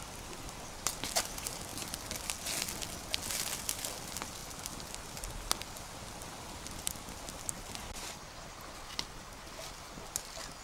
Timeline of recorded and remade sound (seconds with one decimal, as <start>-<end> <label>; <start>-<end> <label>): 0.0-10.6 recorded